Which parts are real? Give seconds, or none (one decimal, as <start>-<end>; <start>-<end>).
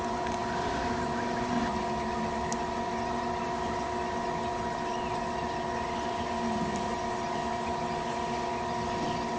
0.0-9.4